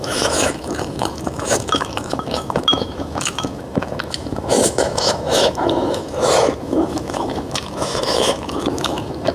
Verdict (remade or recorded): remade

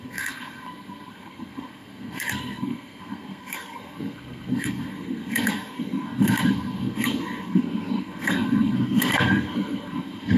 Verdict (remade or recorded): remade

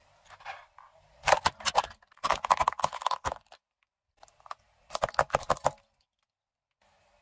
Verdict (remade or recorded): recorded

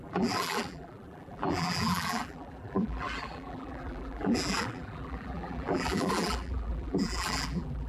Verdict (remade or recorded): remade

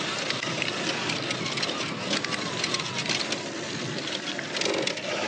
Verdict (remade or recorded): recorded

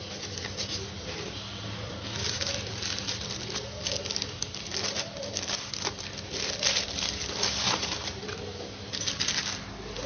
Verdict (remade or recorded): recorded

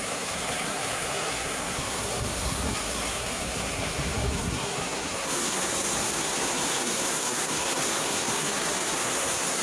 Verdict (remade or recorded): remade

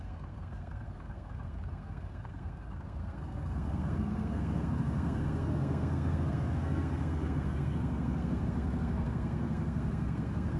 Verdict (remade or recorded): remade